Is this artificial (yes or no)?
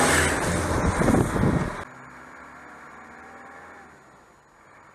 no